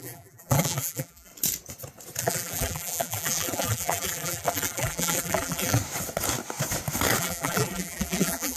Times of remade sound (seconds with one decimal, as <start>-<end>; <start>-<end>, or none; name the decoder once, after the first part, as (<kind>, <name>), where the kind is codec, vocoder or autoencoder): 0.0-1.3 (vocoder, BigVGAN v2); 2.2-5.8; 7.2-8.6